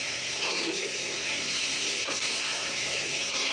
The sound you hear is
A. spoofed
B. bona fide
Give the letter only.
A